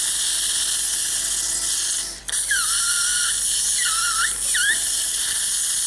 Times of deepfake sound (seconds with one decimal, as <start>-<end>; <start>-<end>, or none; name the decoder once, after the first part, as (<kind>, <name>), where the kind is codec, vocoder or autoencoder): 4.8-5.3 (vocoder, BigVGAN v2)